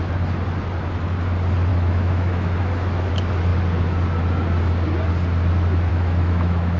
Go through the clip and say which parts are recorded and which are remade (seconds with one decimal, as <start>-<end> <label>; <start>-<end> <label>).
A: 0.0-1.7 recorded; 1.7-3.1 remade; 3.1-5.9 recorded; 5.9-6.8 remade